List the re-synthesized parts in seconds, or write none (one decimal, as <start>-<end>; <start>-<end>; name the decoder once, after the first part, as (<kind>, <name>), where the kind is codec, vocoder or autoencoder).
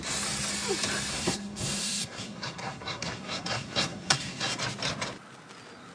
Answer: 1.1-4.6 (codec, SNAC)